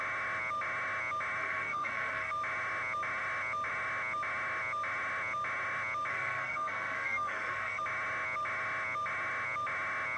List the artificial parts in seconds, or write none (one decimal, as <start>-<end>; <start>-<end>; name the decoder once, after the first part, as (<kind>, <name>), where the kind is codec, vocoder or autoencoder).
1.4-2.3 (codec, SNAC); 6.1-7.8